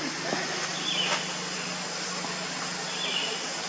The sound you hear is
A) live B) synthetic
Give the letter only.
A